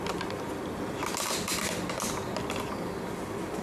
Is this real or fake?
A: real